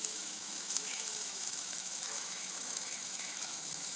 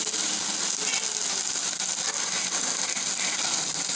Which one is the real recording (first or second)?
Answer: second